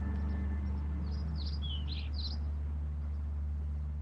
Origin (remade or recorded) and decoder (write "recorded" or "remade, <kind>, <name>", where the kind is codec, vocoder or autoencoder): recorded